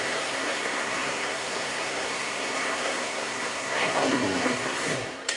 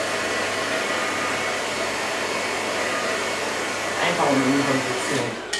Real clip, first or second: second